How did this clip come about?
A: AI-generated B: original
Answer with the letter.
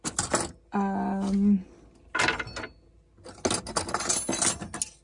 B